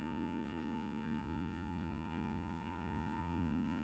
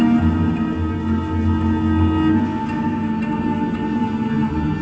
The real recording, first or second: second